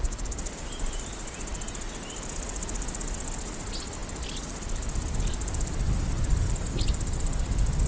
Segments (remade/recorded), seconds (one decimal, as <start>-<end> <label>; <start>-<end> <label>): 0.0-7.9 recorded